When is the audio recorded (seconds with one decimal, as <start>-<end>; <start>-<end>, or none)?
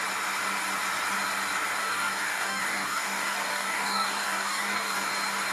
0.0-1.8; 5.1-5.5